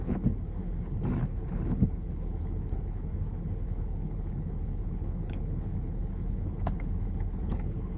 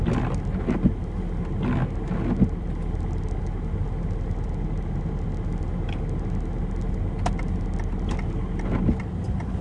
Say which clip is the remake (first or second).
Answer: first